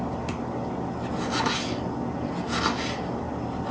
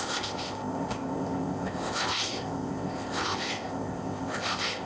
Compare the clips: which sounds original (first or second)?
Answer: first